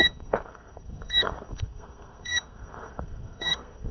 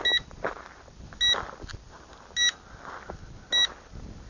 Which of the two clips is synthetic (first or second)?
first